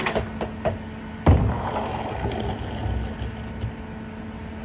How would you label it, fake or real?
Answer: real